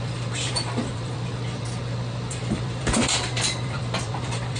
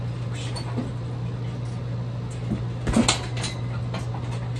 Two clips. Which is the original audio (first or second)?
second